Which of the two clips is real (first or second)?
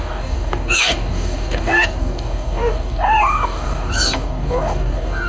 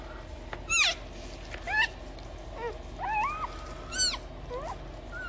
second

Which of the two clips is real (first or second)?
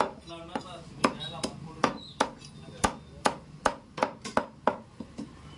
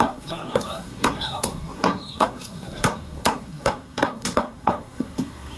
first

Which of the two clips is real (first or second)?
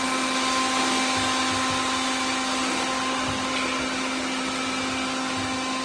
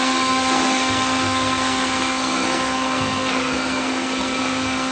first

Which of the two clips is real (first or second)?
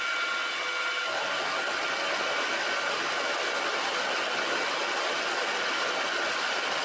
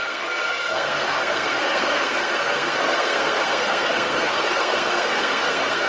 first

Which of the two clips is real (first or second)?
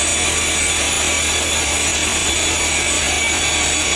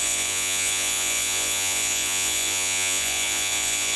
first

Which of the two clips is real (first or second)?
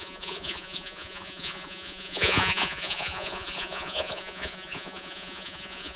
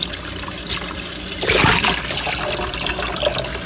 second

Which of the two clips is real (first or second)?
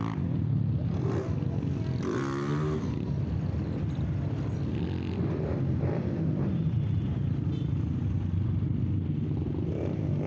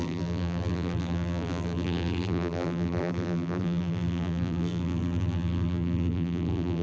first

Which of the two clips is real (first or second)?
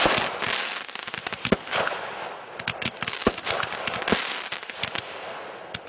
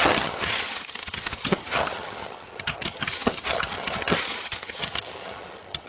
first